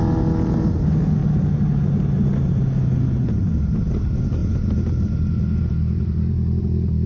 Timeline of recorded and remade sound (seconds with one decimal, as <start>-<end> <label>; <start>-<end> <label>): 0.0-7.1 recorded